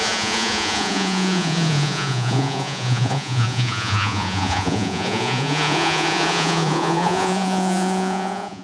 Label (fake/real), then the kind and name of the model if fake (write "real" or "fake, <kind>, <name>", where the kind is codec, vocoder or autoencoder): fake, vocoder, Vocos